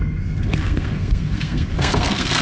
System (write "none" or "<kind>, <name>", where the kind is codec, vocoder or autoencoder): codec, SNAC